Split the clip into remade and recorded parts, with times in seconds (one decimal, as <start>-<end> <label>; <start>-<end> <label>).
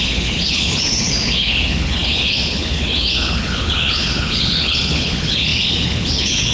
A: 0.0-6.5 remade